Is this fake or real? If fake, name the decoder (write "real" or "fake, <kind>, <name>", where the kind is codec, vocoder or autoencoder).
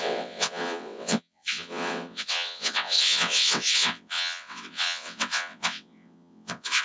fake, vocoder, WaveNeXt